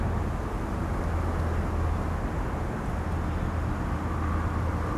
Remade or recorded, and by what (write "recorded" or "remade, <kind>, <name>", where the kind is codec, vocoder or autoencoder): recorded